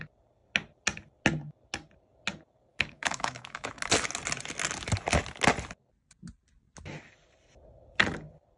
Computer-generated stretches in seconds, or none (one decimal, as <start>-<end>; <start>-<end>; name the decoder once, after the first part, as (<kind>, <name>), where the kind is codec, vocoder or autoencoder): 2.7-3.8 (autoencoder, DAC-VAE)